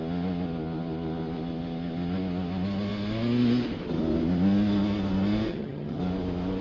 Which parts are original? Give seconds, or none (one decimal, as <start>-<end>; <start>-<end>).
0.0-5.5; 6.0-6.6